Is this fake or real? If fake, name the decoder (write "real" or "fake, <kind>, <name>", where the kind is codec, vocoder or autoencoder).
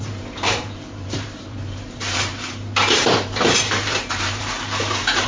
fake, vocoder, BigVGAN v2